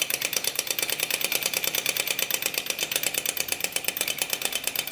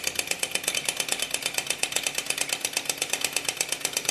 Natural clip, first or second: second